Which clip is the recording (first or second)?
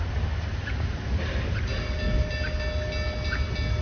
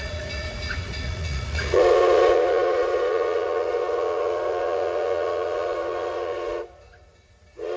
first